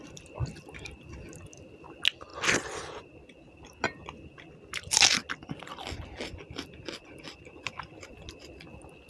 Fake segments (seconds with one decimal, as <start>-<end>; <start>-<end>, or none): none